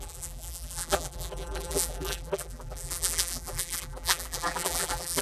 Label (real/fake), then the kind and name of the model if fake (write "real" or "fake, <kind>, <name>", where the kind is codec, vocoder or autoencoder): fake, vocoder, BigVGAN v2